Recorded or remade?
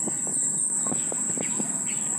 recorded